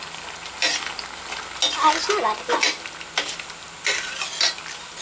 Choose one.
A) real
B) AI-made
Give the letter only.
A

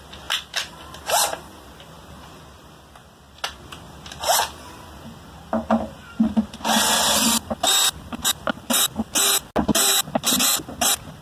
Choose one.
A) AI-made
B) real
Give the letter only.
B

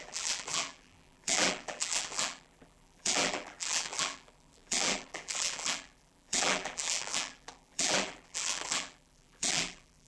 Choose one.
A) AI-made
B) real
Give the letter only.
A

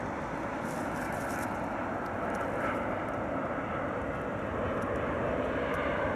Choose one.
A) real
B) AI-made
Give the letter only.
A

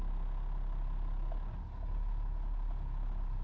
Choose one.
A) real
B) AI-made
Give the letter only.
A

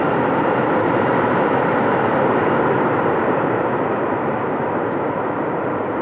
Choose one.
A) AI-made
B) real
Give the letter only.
A